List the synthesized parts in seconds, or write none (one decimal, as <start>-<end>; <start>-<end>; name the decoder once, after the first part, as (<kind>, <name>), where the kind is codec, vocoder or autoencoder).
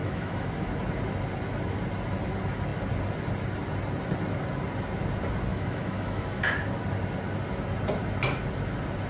0.0-0.7 (autoencoder, DAC-VAE); 5.5-6.4